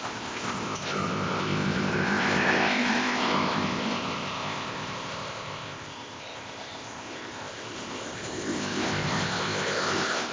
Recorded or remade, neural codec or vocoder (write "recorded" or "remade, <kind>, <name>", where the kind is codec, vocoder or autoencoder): remade, codec, ZipCodec